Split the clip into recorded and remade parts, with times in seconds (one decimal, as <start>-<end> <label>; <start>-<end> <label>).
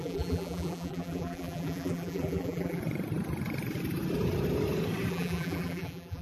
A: 0.0-2.8 remade; 2.8-5.1 recorded; 5.1-6.2 remade